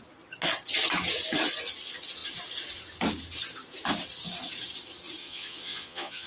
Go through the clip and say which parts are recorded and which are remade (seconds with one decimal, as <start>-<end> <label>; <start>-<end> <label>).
0.0-5.2 recorded; 5.2-6.3 remade